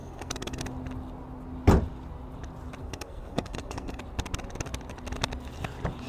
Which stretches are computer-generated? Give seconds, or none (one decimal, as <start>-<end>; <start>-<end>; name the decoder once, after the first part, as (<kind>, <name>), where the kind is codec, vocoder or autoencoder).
0.0-0.6 (codec, SNAC); 2.8-4.0